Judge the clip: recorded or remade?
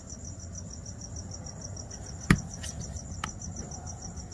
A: recorded